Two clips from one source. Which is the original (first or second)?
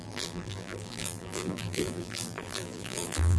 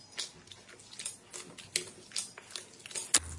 second